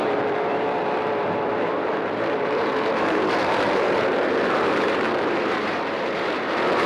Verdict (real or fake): fake